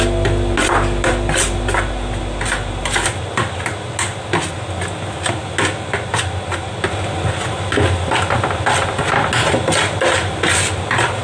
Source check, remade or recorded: recorded